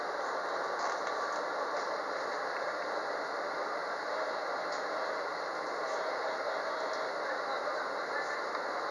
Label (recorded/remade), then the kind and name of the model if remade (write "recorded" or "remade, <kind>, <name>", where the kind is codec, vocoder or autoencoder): recorded